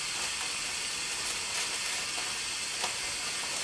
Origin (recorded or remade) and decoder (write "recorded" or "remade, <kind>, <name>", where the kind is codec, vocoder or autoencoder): recorded